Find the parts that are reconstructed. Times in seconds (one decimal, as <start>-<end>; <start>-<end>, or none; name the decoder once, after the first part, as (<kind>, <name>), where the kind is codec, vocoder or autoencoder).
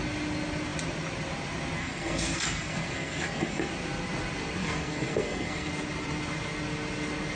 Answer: 1.8-3.7 (codec, SNAC); 4.6-5.7